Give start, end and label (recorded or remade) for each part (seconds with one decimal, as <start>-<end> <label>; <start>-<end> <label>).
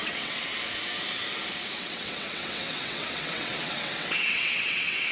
0.0-0.5 remade; 0.5-1.8 recorded; 1.8-5.1 remade